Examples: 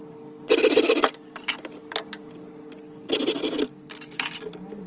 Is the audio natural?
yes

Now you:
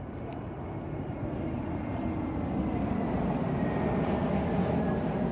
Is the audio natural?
yes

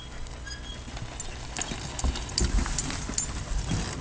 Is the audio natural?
yes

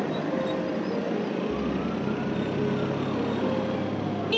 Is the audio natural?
yes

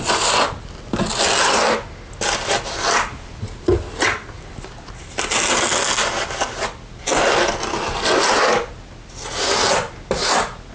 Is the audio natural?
yes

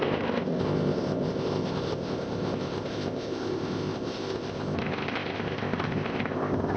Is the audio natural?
no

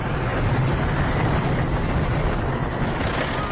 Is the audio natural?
yes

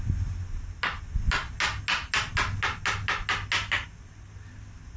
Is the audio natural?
yes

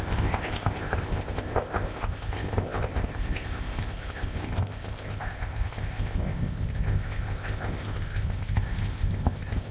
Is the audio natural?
no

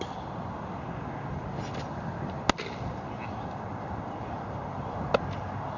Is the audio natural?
yes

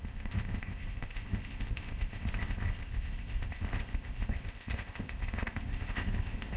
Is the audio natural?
no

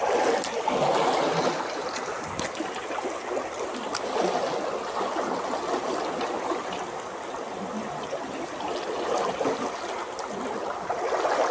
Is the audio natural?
yes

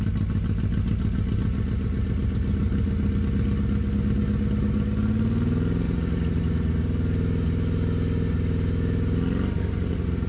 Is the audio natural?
yes